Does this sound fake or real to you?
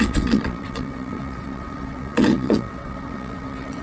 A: fake